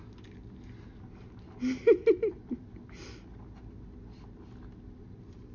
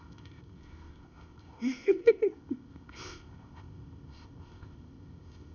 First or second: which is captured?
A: first